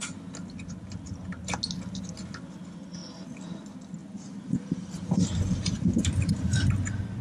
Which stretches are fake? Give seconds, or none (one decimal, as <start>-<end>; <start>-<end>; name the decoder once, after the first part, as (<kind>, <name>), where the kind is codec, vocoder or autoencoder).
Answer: 4.0-6.3 (vocoder, BigVGAN v2)